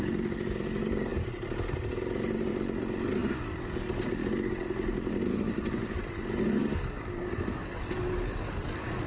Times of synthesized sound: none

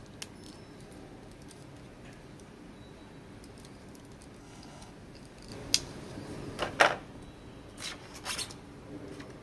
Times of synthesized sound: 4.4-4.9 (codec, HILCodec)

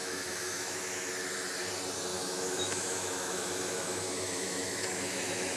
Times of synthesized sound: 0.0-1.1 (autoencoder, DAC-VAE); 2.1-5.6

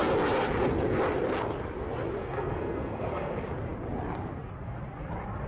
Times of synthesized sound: 2.2-3.3 (codec, SNAC)

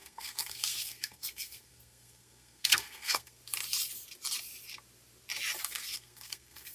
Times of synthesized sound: 0.0-3.4 (codec, SNAC); 5.7-6.7

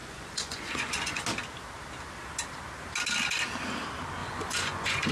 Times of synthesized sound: 0.0-1.2 (vocoder, Vocos); 4.2-5.1

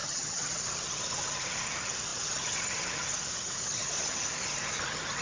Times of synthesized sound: 0.0-0.5 (vocoder, HiFi-GAN)

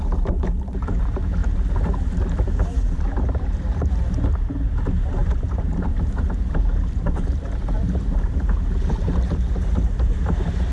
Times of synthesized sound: 0.0-10.7 (vocoder, BigVGAN v2)